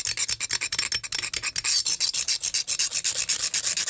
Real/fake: real